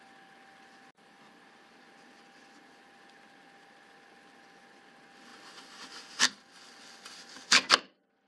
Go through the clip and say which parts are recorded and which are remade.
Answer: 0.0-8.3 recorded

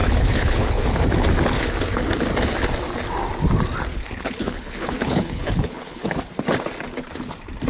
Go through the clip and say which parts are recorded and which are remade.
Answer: 0.0-0.8 remade; 0.8-3.9 recorded; 3.9-6.2 remade; 6.2-7.7 recorded

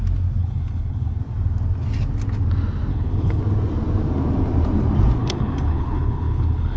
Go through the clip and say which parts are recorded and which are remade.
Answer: 0.0-0.4 recorded; 0.4-1.2 remade; 1.2-2.9 recorded; 2.9-3.4 remade; 3.4-5.2 recorded; 5.2-6.8 remade

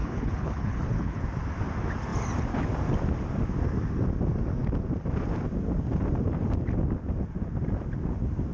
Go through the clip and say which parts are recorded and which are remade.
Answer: 0.0-1.2 remade; 1.2-8.5 recorded

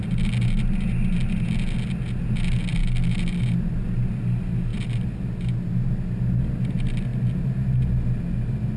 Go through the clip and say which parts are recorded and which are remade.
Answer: 0.0-8.8 recorded

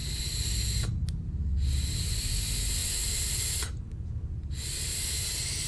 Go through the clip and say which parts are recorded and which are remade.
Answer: 0.0-5.7 recorded